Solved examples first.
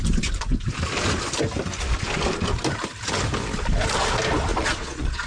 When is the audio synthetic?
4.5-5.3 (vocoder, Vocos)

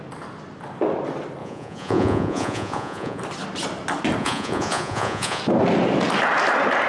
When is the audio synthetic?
1.4-3.2 (vocoder, Vocos); 4.2-5.4

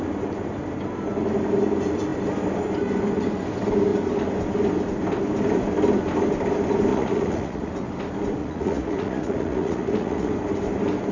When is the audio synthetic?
6.9-7.7 (vocoder, Vocos); 8.4-10.3

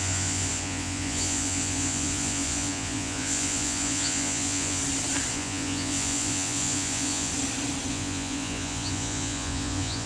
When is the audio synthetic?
0.0-4.8 (vocoder, Vocos); 5.3-7.3; 7.9-10.1